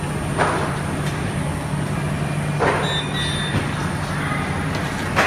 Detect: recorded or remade recorded